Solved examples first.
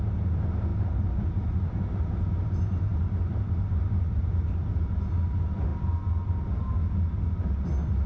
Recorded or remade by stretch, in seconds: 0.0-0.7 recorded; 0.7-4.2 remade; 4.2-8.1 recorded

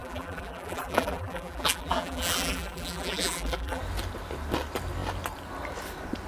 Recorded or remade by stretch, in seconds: 0.0-3.8 remade; 3.8-6.3 recorded

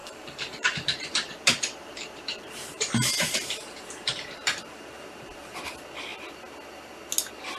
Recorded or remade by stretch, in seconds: 0.0-4.6 remade; 4.6-7.6 recorded